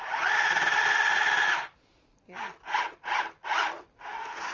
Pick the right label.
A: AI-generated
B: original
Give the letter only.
B